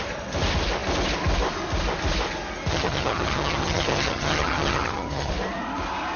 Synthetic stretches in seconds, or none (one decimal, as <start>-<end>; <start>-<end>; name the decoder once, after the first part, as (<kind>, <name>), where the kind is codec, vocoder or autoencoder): 2.7-5.3 (vocoder, HiFi-GAN)